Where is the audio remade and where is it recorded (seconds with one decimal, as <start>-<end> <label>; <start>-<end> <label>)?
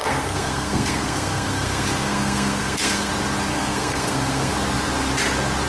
0.0-3.1 remade; 3.1-3.5 recorded; 3.5-4.5 remade; 4.5-5.7 recorded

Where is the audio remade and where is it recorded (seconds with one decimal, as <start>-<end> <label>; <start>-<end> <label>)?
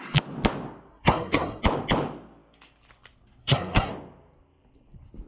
0.0-0.9 recorded; 0.9-1.6 remade; 1.6-3.4 recorded; 3.4-3.9 remade; 3.9-5.3 recorded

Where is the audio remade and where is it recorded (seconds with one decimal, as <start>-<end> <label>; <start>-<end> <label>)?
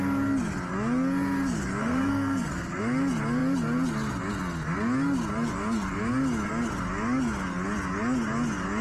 0.0-1.8 recorded; 1.8-2.8 remade; 2.8-8.8 recorded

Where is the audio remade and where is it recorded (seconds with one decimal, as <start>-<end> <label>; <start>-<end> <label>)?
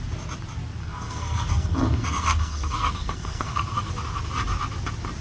0.0-0.8 recorded; 0.8-3.9 remade; 3.9-5.2 recorded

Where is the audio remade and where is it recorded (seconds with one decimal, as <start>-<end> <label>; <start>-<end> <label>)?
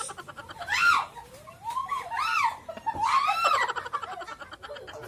0.0-5.1 recorded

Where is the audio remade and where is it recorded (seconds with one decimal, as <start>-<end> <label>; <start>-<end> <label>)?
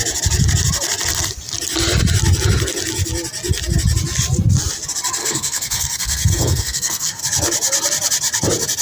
0.0-5.2 recorded; 5.2-7.2 remade; 7.2-8.8 recorded